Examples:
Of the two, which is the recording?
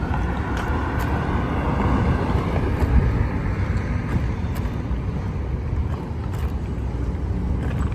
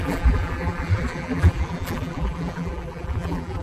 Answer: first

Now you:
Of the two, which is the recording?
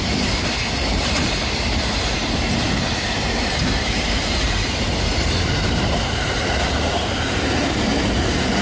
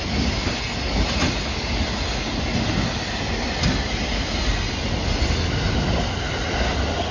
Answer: second